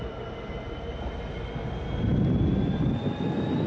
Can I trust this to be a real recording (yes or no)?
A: yes